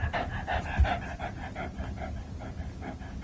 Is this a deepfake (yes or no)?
no